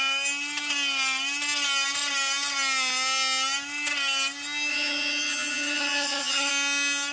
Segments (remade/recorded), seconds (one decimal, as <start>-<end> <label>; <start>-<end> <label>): 0.0-4.7 recorded; 4.7-6.5 remade; 6.5-7.1 recorded